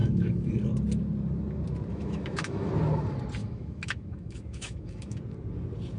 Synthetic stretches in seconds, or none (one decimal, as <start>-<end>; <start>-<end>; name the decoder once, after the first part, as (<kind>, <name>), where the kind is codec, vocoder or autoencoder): 0.0-0.5 (autoencoder, DAC-VAE); 1.9-2.7; 3.4-5.2